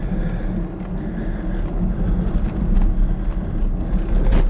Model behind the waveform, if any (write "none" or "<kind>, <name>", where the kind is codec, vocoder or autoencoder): none